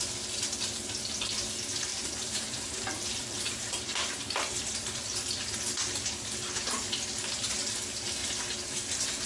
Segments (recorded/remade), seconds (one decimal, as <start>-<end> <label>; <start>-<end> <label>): 0.0-1.9 recorded; 1.9-4.1 remade; 4.1-9.3 recorded